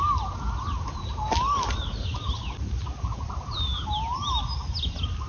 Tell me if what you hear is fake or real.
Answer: real